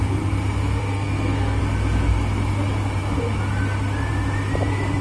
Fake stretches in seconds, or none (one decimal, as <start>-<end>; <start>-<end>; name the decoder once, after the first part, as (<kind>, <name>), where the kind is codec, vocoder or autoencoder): 0.8-1.6 (codec, SNAC)